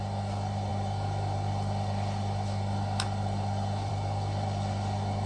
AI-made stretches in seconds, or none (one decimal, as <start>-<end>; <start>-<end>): none